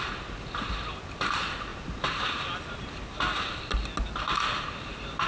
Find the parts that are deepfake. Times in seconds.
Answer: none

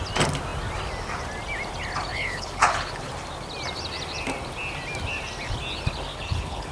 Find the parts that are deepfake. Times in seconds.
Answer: 2.1-3.1 (codec, HILCodec); 6.1-6.7

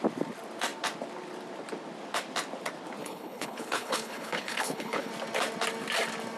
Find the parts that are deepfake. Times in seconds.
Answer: 3.0-5.1 (codec, HILCodec)

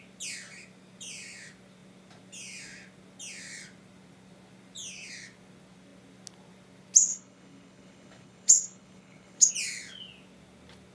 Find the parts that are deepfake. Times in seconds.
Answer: 7.1-9.5 (codec, HILCodec)

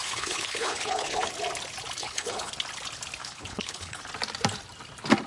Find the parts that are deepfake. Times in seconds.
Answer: 0.0-1.3 (codec, HILCodec); 2.0-2.5; 3.2-4.0